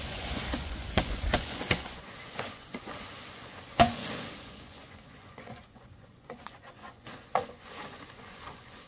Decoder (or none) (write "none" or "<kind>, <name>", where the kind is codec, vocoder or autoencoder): vocoder, Vocos